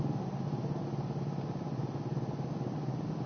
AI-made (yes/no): no